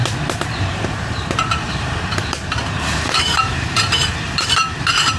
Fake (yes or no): yes